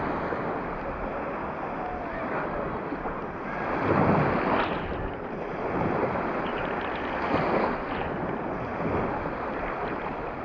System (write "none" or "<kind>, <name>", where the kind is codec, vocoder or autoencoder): none